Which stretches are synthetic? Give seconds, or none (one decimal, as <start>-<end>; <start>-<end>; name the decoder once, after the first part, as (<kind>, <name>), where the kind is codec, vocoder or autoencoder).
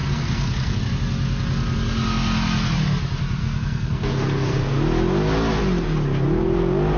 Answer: 0.0-0.8 (codec, SNAC); 3.4-4.8